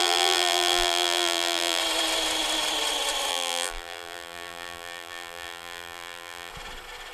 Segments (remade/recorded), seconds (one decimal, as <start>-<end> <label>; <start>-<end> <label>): 0.0-1.8 remade; 1.8-3.3 recorded; 3.3-6.5 remade; 6.5-7.1 recorded